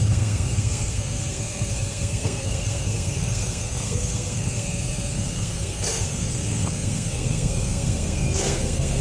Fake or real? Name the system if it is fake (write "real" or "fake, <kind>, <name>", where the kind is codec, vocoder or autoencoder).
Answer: fake, codec, SNAC